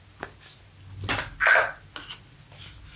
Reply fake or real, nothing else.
real